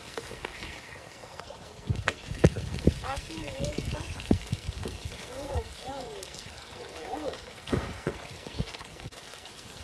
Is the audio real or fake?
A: fake